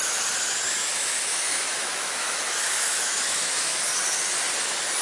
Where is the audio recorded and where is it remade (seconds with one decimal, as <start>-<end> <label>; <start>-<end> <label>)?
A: 0.0-0.8 recorded; 0.8-3.8 remade; 3.8-5.0 recorded